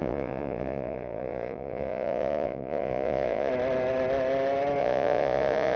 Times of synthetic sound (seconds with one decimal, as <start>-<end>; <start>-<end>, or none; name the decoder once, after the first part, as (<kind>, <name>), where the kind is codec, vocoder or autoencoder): 0.0-3.5 (vocoder, Vocos); 4.8-5.8